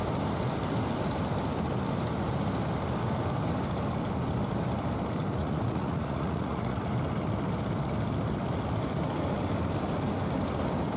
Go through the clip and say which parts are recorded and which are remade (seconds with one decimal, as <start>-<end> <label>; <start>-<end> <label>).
0.0-5.4 recorded; 5.4-6.9 remade; 6.9-11.0 recorded